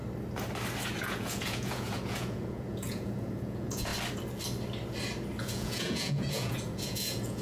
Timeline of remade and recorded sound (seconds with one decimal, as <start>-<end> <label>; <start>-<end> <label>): 0.0-1.0 recorded; 1.0-3.9 remade; 3.9-5.4 recorded; 5.4-7.4 remade